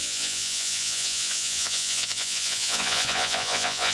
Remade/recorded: remade